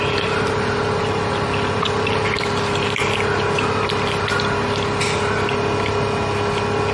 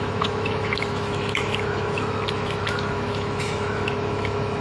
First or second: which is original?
first